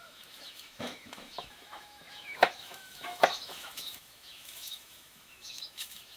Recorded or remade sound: remade